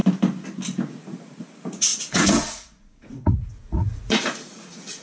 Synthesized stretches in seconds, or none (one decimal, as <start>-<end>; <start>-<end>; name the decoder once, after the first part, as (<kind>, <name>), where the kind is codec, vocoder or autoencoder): 0.9-5.0 (vocoder, Vocos)